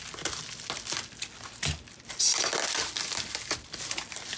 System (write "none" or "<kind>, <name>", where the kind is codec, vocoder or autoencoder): none